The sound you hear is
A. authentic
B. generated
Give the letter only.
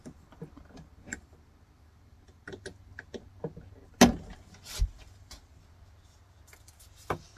A